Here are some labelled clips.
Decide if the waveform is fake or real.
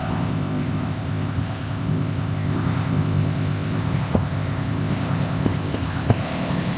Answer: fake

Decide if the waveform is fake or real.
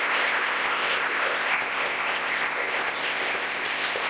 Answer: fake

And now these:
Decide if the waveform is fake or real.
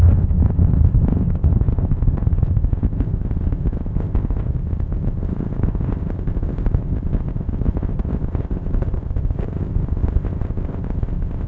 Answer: fake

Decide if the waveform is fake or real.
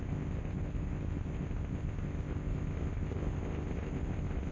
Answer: fake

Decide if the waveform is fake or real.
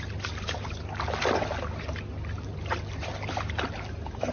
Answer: real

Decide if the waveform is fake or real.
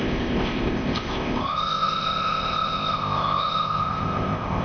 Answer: fake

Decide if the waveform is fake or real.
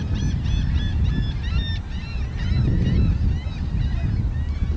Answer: real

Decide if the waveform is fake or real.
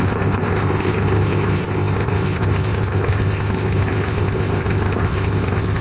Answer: fake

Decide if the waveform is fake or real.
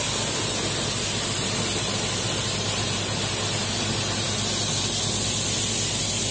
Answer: real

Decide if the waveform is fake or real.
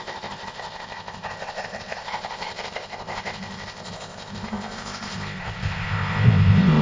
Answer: fake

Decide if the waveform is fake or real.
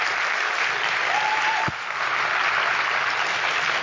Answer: real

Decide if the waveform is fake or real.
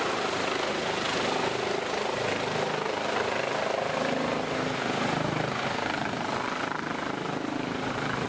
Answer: real